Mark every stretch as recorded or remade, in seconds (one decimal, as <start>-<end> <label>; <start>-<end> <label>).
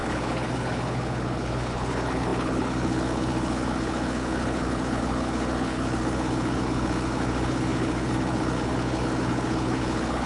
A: 0.0-10.3 remade